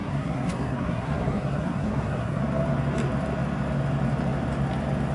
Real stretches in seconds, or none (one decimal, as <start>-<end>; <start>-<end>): 2.4-5.1